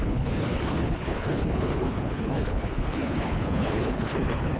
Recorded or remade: remade